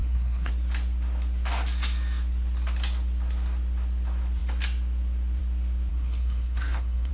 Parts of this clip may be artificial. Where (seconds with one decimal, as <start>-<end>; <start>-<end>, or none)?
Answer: 0.0-0.5; 5.9-7.1